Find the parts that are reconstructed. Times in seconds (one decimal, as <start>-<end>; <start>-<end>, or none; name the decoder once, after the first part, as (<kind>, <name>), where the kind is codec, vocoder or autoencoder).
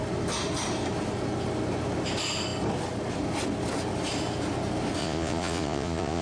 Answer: 5.0-6.2 (vocoder, Vocos)